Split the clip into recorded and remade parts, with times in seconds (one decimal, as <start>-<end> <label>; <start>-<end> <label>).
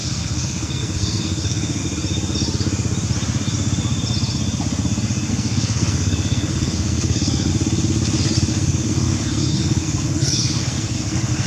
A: 0.0-1.8 remade; 1.8-5.3 recorded; 5.3-7.5 remade; 7.5-8.5 recorded; 8.5-11.5 remade